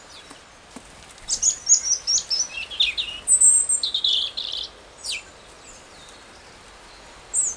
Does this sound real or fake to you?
real